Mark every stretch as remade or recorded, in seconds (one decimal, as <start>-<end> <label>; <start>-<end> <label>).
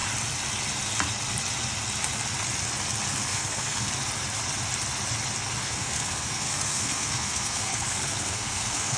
0.0-3.3 recorded; 3.3-3.9 remade; 3.9-5.6 recorded; 5.6-9.0 remade